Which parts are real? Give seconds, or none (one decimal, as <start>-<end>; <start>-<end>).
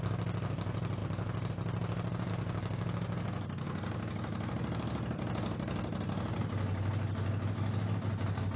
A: 0.0-8.6